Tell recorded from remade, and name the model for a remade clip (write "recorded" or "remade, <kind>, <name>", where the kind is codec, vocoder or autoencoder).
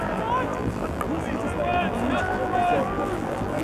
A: remade, vocoder, BigVGAN v2